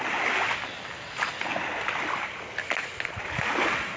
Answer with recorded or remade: recorded